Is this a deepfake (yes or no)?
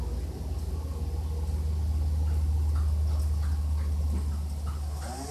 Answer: no